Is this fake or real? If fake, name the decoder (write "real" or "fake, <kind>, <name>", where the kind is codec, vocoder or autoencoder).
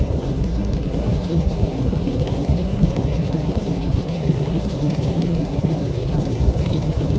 fake, codec, SNAC